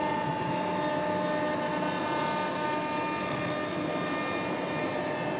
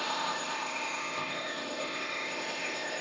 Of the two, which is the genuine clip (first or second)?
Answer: first